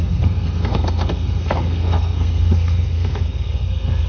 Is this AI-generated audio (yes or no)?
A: yes